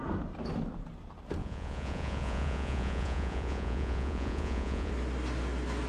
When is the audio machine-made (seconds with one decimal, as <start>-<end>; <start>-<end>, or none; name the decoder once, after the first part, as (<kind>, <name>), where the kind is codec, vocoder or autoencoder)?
1.4-4.9 (vocoder, Vocos)